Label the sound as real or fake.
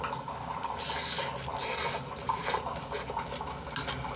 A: real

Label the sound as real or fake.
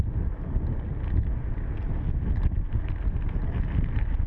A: real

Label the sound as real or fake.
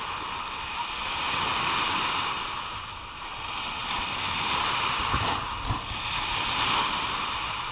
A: real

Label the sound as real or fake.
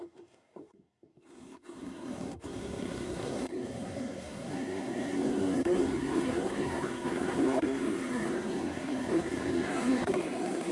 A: fake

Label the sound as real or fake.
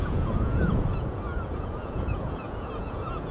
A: fake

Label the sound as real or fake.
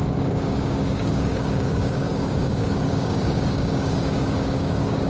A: fake